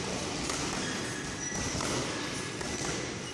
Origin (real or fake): real